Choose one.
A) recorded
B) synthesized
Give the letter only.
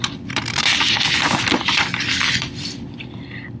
B